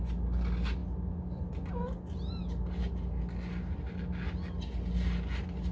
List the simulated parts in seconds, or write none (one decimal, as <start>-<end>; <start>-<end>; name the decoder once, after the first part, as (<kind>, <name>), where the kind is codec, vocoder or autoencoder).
none